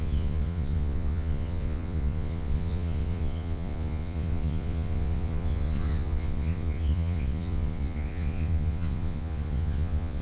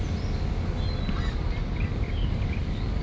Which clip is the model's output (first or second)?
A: first